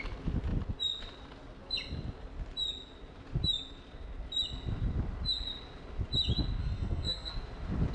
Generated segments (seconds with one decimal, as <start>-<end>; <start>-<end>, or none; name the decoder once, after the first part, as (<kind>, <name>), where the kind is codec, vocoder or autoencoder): 6.6-7.3 (codec, SNAC)